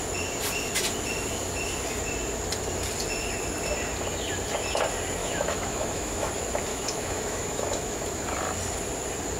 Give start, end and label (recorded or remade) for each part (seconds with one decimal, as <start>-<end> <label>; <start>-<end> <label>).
0.0-5.2 recorded; 5.2-6.3 remade; 6.3-6.7 recorded; 6.7-8.0 remade; 8.0-9.4 recorded